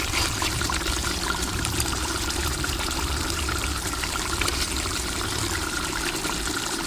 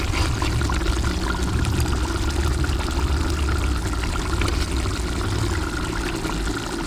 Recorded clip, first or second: second